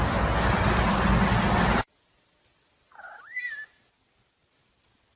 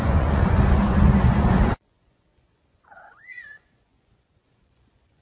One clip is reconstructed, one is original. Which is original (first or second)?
first